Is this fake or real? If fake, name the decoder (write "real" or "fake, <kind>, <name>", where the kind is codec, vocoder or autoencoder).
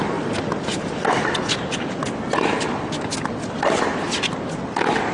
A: real